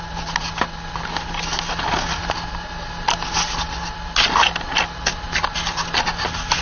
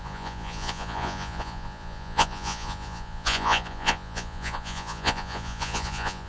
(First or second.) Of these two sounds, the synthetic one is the second